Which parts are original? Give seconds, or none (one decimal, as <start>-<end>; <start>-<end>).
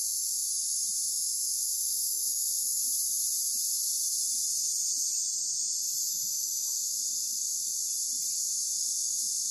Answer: 0.5-1.1; 2.8-6.1; 7.8-8.4